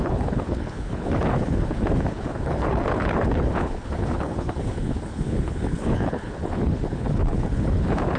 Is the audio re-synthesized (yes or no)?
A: yes